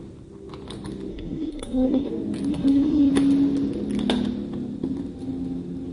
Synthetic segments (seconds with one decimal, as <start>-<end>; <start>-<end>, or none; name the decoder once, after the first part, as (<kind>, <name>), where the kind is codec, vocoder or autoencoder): 1.1-2.1 (codec, SNAC); 2.5-3.1